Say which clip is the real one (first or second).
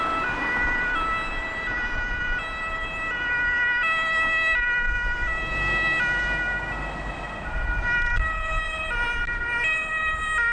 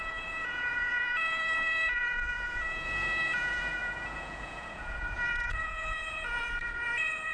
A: first